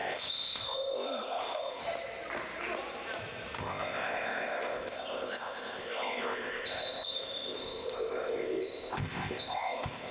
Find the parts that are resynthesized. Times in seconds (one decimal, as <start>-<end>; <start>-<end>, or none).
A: 0.0-1.8; 3.6-10.1